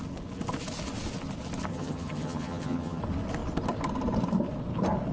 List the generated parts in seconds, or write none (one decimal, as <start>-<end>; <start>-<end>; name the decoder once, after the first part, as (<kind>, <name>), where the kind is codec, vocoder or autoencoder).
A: 1.7-3.0 (vocoder, HiFi-GAN)